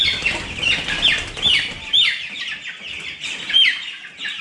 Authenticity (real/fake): real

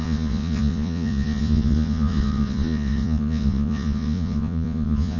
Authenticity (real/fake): fake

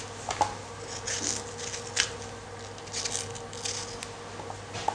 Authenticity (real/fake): real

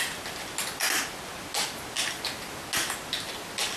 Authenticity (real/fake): real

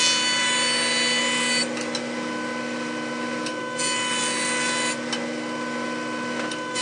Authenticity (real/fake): real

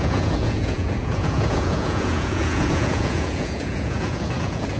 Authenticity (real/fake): fake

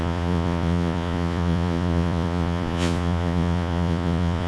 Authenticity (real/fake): fake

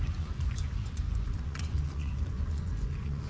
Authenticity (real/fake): fake